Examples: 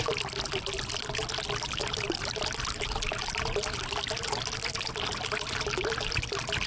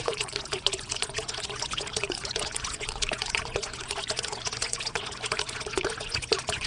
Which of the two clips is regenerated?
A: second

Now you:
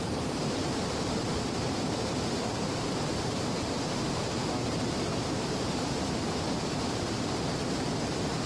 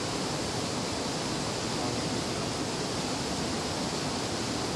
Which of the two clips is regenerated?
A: first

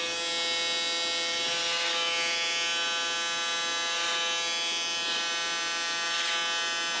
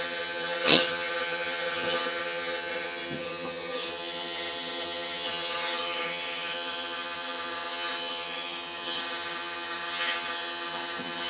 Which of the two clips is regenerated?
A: second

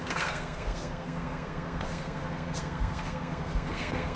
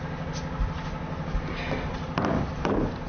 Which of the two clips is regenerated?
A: first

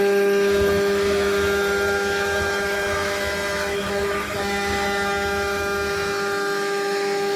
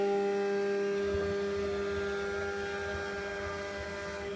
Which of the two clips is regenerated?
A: first